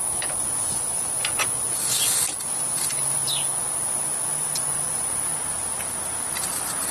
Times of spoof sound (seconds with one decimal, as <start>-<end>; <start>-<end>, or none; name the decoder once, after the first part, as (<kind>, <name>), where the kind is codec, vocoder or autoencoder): 0.4-1.1 (vocoder, Vocos); 4.3-5.1